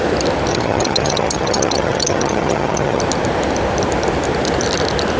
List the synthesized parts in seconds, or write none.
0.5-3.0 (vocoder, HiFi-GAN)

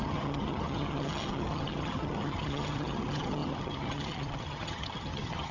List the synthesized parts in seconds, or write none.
0.0-5.5 (vocoder, HiFi-GAN)

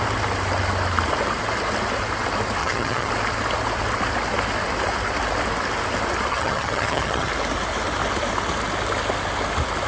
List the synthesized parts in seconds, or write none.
2.6-3.1 (vocoder, HiFi-GAN); 6.3-7.3

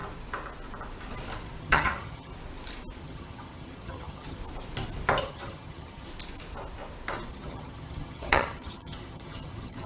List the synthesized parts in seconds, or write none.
1.6-2.3 (vocoder, HiFi-GAN); 3.0-4.4; 5.2-6.1; 7.3-9.9

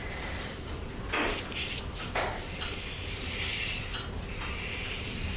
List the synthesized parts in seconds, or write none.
none

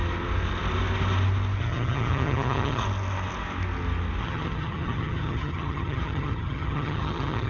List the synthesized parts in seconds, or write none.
1.6-2.8 (vocoder, HiFi-GAN); 4.2-7.5

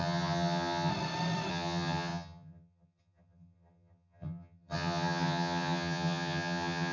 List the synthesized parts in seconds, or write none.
0.0-0.9 (vocoder, HiFi-GAN); 1.5-6.9

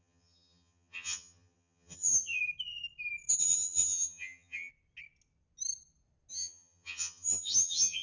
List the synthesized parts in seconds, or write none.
0.0-2.4 (vocoder, HiFi-GAN); 3.4-4.7; 6.3-8.0